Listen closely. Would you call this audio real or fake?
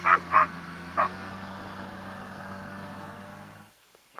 fake